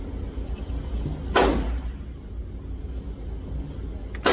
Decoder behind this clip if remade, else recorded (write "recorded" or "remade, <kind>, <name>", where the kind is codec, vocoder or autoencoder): recorded